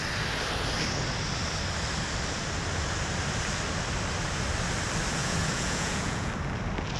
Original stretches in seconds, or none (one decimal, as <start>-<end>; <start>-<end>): 0.0-5.2; 6.3-7.0